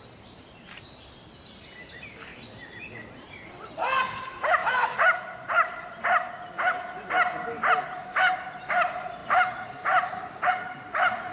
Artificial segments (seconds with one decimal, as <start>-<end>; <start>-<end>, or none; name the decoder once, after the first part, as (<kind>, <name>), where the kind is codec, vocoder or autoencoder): 0.0-2.3 (vocoder, BigVGAN v2); 2.8-11.3